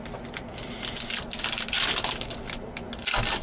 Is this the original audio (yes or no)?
yes